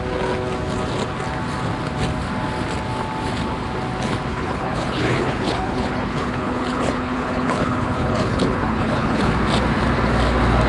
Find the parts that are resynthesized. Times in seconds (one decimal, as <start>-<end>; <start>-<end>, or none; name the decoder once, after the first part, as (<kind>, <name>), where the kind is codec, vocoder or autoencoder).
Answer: 4.3-9.3 (codec, HILCodec)